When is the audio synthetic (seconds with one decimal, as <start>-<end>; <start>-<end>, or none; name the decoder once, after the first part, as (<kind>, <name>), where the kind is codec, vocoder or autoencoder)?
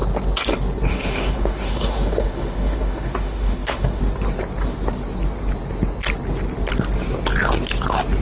0.9-4.0 (autoencoder, DAC-VAE)